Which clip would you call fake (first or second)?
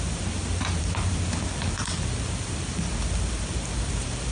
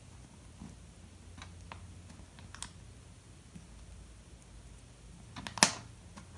first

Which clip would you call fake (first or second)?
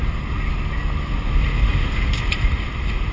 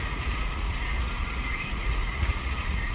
second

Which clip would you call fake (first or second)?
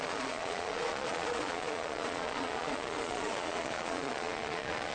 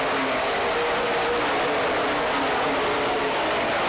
first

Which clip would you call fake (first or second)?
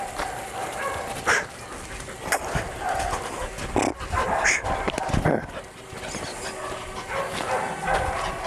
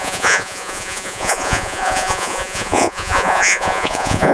second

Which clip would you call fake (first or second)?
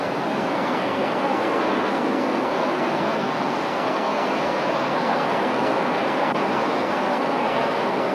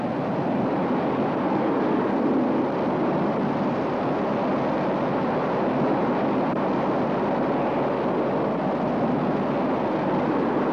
first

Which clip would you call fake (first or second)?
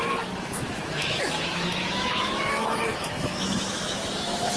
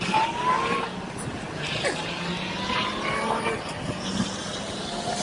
first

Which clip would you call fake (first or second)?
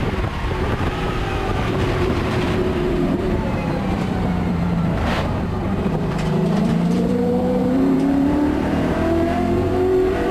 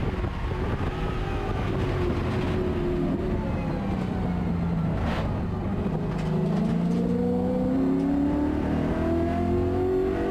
first